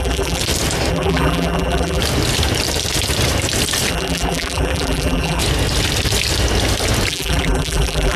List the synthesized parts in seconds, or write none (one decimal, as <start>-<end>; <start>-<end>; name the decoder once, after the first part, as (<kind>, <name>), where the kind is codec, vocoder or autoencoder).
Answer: 0.0-0.4 (vocoder, BigVGAN v2); 0.9-2.0; 3.9-5.4; 7.1-8.2